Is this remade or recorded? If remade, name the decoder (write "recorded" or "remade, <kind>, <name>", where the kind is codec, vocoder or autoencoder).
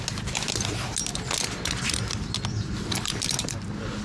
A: recorded